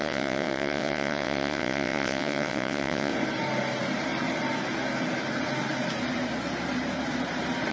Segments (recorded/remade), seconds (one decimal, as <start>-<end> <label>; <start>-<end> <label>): 0.0-3.1 remade; 3.1-7.7 recorded